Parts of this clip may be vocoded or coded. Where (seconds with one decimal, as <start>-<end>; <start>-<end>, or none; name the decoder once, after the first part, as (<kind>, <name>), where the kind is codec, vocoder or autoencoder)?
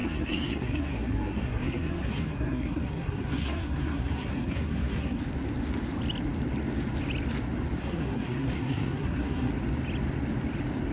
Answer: 0.0-5.2 (codec, SNAC); 7.8-9.5